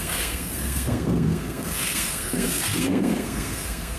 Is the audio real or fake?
fake